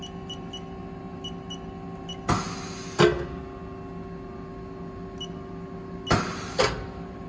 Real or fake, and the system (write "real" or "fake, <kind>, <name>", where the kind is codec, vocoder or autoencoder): real